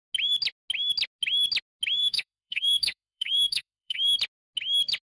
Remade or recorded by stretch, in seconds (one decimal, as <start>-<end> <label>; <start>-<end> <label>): 0.0-2.0 recorded; 2.0-4.2 remade; 4.2-5.0 recorded

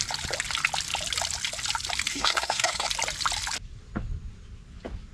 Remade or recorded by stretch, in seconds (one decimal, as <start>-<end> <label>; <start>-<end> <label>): 0.0-2.1 recorded; 2.1-2.9 remade; 2.9-5.1 recorded